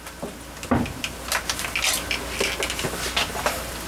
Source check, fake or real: real